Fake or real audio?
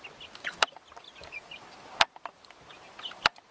real